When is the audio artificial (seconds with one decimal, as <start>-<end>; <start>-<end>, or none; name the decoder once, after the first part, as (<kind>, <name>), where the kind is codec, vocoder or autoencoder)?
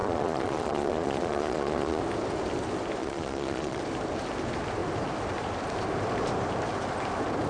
0.0-2.0 (vocoder, Vocos); 3.0-3.8